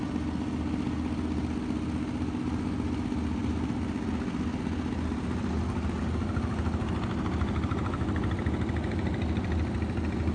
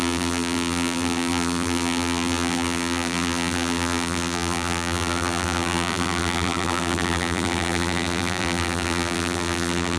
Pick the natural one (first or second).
first